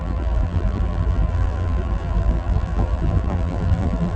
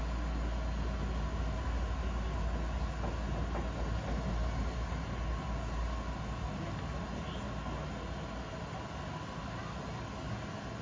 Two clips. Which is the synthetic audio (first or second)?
first